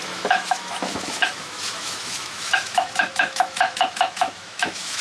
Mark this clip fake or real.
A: fake